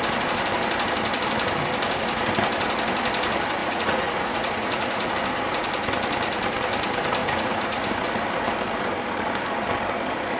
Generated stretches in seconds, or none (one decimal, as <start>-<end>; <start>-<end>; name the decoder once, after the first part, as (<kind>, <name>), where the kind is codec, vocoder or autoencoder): 3.6-5.1 (vocoder, Vocos); 7.2-7.9